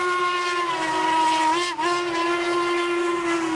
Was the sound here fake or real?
real